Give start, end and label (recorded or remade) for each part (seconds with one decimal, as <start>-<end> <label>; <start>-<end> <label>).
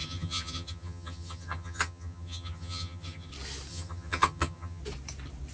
0.0-3.3 remade; 3.3-3.7 recorded; 3.7-4.8 remade; 4.8-5.5 recorded